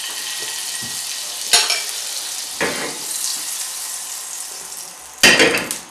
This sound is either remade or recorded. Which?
recorded